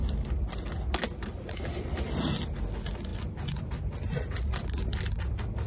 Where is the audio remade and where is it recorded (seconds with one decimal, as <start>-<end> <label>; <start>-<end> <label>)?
0.0-5.7 recorded